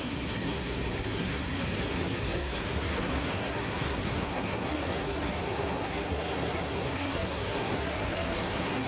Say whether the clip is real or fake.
fake